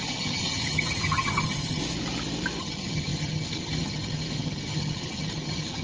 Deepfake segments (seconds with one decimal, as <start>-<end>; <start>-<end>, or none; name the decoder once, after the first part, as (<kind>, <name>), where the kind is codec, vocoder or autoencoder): 0.0-1.8 (vocoder, HiFi-GAN); 2.6-5.8